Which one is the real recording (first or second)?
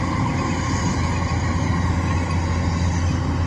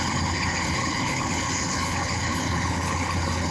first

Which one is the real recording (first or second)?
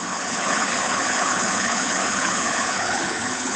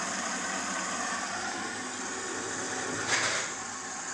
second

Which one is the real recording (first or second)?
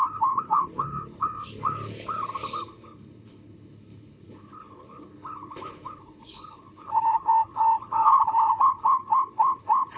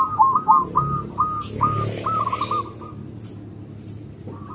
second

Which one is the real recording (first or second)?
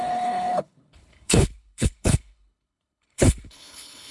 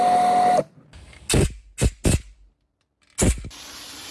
second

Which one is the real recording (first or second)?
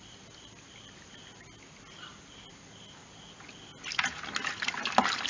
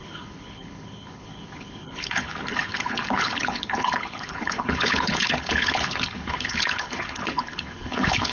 first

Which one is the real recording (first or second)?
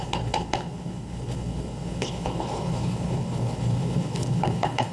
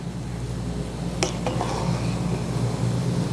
second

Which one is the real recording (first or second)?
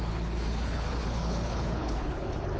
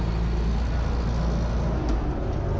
second